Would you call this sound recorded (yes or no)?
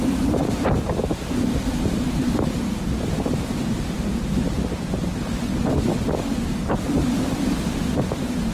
yes